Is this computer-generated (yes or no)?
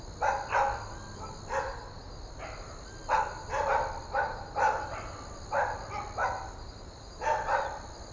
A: no